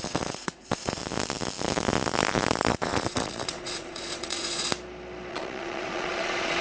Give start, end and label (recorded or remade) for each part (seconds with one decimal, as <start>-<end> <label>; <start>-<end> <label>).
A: 0.0-1.0 remade; 1.0-2.7 recorded; 2.7-4.7 remade; 4.7-5.3 recorded; 5.3-6.6 remade

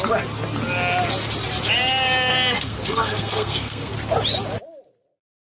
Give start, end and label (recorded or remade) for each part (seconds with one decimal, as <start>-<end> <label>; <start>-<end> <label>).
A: 0.0-2.3 recorded; 2.3-3.9 remade; 3.9-5.5 recorded